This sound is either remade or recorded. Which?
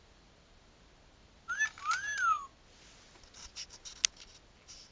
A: recorded